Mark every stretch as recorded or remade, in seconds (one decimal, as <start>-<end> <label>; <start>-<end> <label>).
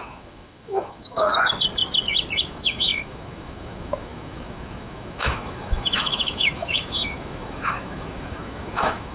0.0-1.3 remade; 1.3-2.4 recorded; 2.4-9.1 remade